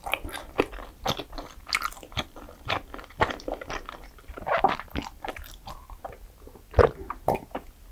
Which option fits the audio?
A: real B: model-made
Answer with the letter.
A